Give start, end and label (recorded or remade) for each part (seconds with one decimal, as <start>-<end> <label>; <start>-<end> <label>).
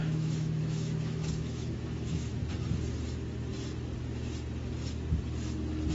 0.0-2.4 remade; 2.4-5.9 recorded